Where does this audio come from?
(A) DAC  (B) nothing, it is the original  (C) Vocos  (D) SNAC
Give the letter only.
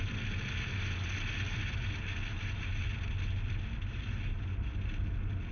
B